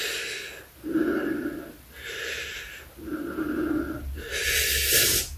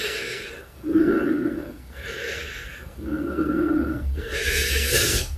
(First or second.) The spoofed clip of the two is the second